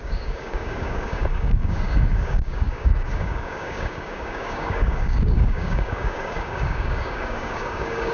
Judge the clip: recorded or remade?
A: remade